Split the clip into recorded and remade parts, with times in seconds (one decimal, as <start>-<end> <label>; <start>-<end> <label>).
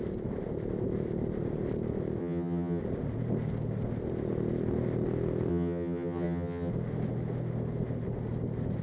0.0-2.2 recorded; 2.2-2.8 remade; 2.8-5.5 recorded; 5.5-6.7 remade; 6.7-8.8 recorded